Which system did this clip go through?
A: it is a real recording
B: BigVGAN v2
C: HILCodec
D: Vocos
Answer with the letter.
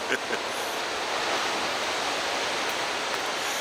A